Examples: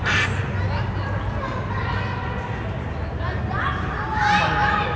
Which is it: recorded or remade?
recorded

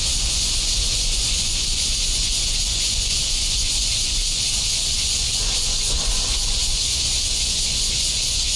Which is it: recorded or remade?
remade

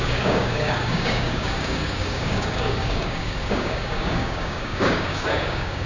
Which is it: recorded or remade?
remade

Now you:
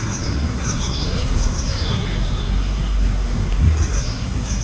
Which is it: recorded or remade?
remade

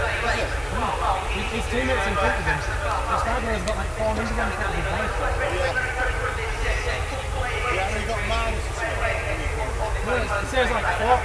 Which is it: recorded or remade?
recorded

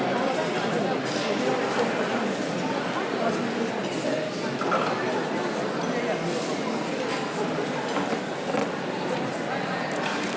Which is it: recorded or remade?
recorded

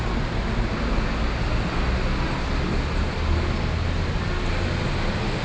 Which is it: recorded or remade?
recorded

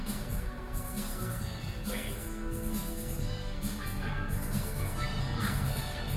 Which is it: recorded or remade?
remade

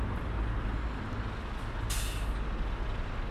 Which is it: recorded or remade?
recorded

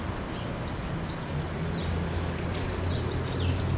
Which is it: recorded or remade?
recorded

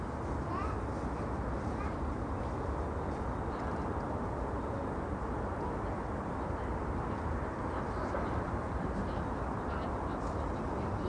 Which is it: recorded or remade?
recorded